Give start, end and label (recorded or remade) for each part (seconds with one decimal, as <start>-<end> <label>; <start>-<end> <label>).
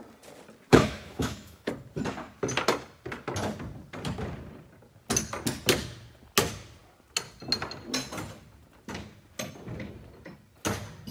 0.0-0.7 recorded; 0.7-1.7 remade; 1.7-11.1 recorded